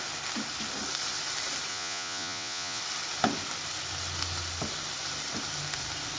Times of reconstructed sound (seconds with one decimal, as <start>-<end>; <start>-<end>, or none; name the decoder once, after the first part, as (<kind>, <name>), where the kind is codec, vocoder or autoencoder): 1.7-2.8 (vocoder, Vocos)